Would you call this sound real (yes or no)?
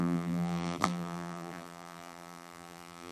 no